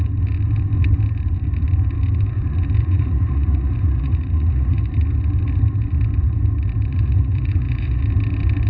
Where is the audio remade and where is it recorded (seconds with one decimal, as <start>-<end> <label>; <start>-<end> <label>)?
0.0-2.8 recorded; 2.8-4.9 remade; 4.9-6.9 recorded; 6.9-8.0 remade; 8.0-8.7 recorded